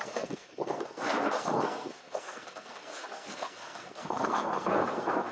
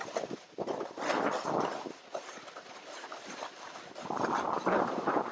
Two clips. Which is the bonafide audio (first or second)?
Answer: second